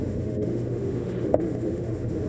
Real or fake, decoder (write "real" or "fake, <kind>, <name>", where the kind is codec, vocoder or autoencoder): fake, autoencoder, DAC-VAE